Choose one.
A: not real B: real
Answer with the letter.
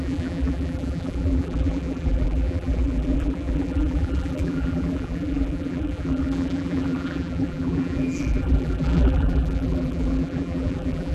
A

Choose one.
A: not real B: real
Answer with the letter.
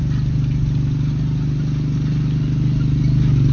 B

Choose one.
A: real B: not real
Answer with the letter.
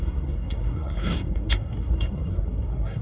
B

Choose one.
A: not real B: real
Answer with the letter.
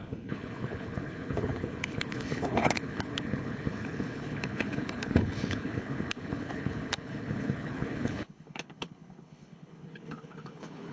A